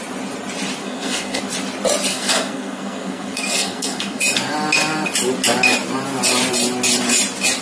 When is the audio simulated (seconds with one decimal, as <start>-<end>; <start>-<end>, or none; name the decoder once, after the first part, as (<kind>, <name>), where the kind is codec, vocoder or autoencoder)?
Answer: 0.8-1.4 (codec, SNAC); 2.1-4.2